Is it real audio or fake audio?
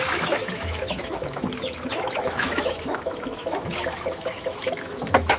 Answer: fake